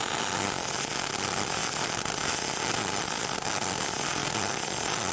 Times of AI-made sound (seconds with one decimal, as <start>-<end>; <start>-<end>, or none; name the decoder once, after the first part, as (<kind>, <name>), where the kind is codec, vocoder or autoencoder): none